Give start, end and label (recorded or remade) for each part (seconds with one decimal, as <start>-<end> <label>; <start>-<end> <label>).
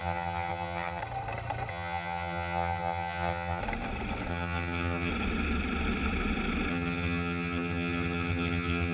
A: 0.0-1.0 remade; 1.0-1.7 recorded; 1.7-3.6 remade; 3.6-4.3 recorded; 4.3-5.1 remade; 5.1-6.7 recorded; 6.7-8.9 remade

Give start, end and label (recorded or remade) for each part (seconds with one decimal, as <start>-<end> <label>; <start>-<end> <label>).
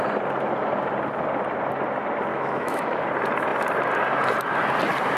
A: 0.0-2.3 recorded; 2.3-3.1 remade; 3.1-5.2 recorded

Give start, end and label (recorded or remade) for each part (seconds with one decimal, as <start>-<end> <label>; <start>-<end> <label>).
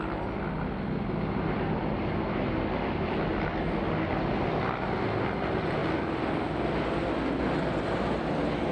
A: 0.0-8.7 recorded